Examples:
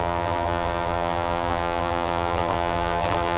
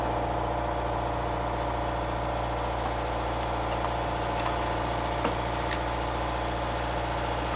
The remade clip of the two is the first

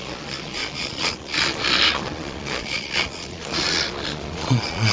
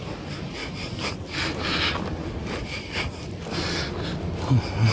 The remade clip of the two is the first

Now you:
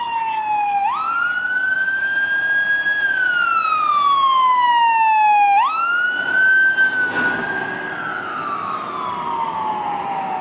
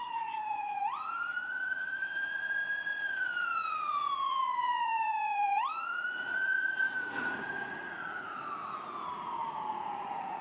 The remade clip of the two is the second